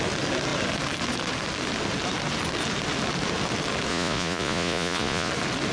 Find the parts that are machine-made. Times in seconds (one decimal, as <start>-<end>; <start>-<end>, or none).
3.9-5.3